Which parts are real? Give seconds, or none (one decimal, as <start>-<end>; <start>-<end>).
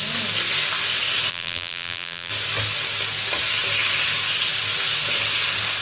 0.0-1.3; 2.3-5.8